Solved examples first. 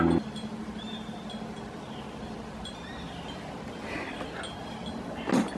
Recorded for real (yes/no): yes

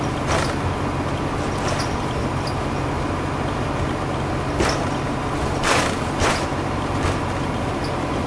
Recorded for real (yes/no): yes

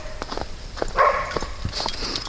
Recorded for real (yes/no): yes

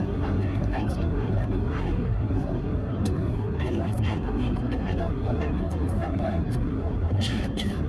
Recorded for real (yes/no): no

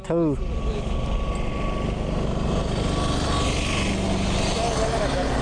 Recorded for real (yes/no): yes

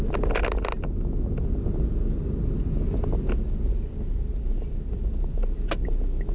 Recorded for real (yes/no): yes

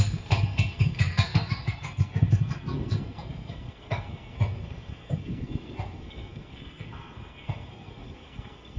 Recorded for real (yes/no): no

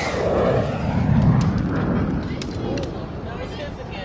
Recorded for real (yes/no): yes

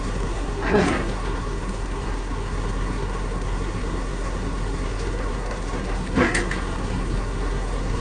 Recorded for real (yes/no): no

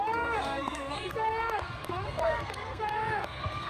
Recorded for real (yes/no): no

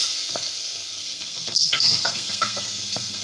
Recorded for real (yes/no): no